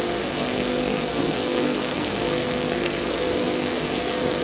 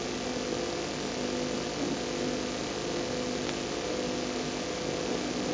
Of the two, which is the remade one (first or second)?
first